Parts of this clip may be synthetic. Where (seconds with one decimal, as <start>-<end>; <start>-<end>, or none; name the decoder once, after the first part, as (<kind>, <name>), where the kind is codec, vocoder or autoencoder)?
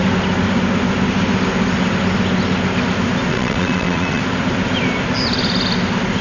3.3-4.2 (vocoder, WaveNeXt)